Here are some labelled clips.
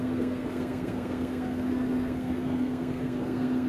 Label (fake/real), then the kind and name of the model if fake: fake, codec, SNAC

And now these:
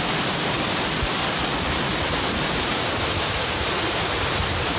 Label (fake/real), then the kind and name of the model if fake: real